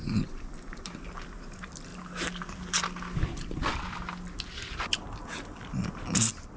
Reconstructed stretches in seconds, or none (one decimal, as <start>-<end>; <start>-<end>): none